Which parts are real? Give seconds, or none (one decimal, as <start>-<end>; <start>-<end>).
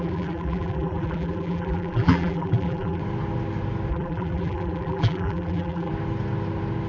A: 3.0-3.9; 5.9-6.9